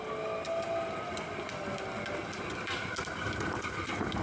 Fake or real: real